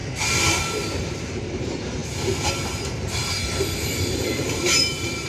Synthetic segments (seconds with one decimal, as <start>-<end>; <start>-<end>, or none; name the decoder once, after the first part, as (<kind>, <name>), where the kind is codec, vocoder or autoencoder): 1.0-2.0 (vocoder, BigVGAN v2); 4.1-5.3